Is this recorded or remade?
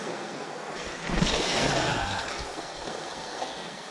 remade